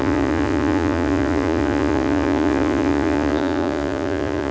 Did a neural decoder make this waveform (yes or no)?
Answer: yes